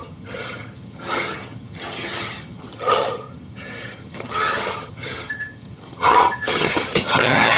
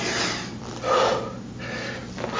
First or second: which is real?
second